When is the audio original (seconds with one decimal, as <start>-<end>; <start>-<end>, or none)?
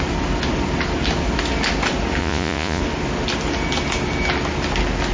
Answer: 0.0-2.2; 2.8-5.1